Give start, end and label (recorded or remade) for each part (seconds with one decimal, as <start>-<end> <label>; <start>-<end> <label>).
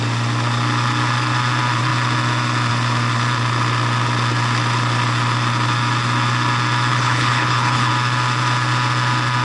0.0-6.9 recorded; 6.9-7.9 remade; 7.9-9.4 recorded